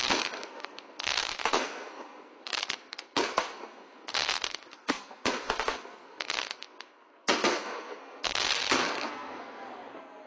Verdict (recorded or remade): remade